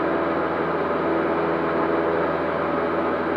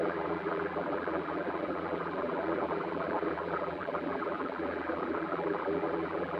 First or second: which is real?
first